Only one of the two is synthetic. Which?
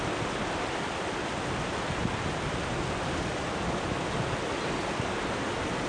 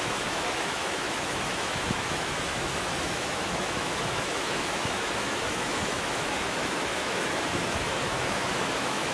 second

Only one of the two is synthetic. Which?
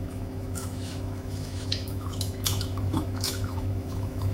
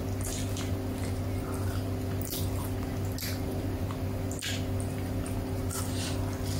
first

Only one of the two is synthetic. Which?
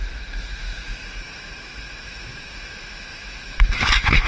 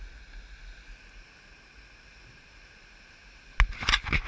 first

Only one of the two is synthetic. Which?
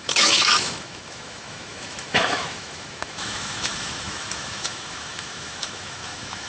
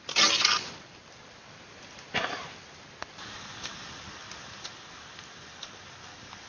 first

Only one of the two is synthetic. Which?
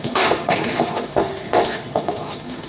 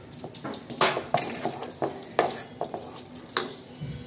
first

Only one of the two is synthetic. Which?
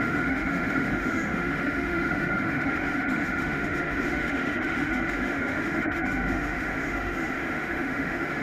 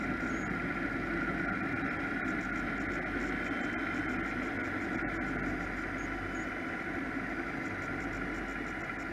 first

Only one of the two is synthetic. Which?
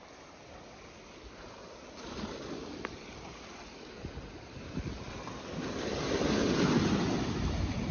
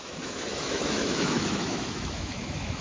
second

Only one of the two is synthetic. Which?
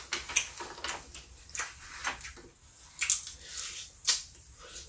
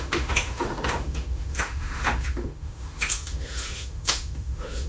second